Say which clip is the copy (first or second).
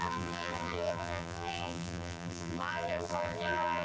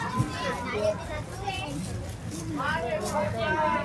first